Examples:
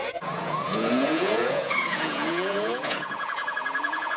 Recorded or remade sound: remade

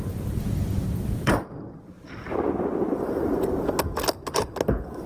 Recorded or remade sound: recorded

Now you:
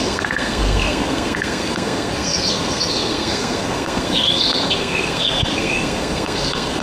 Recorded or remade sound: remade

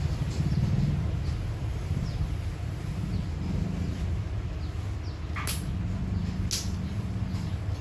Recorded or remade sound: recorded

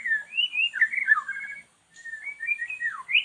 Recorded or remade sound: recorded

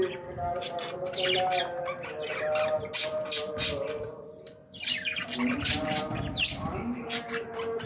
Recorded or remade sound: recorded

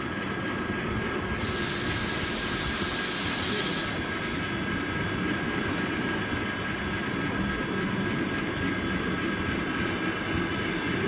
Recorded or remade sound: recorded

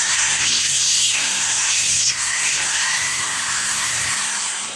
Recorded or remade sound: remade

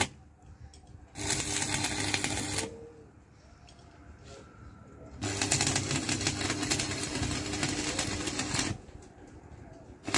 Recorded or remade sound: recorded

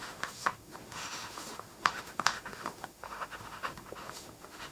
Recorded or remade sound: remade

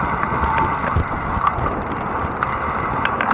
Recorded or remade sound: recorded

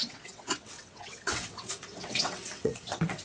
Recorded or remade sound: remade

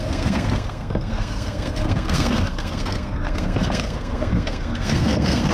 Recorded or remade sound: remade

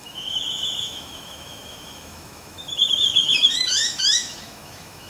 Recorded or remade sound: remade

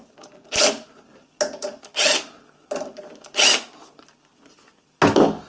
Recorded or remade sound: recorded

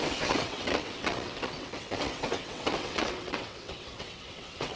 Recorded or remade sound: remade